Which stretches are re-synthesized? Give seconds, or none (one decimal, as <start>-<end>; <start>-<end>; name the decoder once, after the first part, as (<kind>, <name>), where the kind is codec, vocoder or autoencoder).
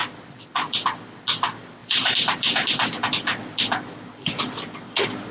0.0-0.5 (vocoder, BigVGAN v2); 1.8-3.0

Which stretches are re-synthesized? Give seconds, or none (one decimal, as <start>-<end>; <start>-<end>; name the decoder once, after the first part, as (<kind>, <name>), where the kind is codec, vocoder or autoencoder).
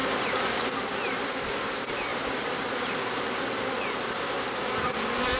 0.0-0.7 (vocoder, BigVGAN v2); 2.1-3.5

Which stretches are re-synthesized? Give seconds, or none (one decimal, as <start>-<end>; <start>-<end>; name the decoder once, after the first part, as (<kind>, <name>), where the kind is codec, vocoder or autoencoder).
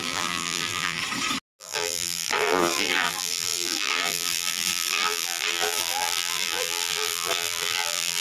0.0-1.0 (vocoder, BigVGAN v2); 1.6-8.2